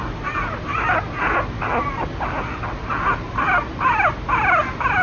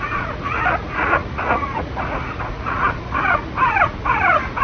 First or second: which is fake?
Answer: second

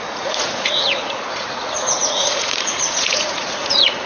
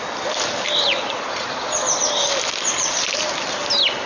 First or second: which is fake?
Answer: first